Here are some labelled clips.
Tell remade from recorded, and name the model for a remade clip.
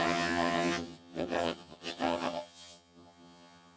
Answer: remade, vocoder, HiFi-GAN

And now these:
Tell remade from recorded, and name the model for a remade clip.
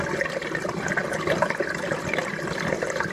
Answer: recorded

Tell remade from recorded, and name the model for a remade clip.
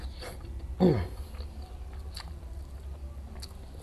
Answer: recorded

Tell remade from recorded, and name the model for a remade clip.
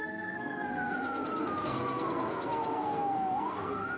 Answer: remade, codec, SNAC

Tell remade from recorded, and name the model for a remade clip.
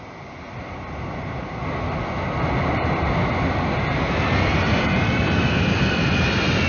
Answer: recorded